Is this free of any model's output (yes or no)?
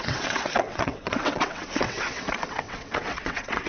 no